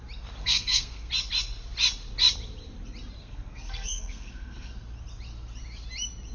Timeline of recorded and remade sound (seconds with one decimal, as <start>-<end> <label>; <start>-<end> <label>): 0.0-0.4 recorded; 0.4-1.1 remade; 1.1-3.2 recorded; 3.2-4.7 remade; 4.7-6.3 recorded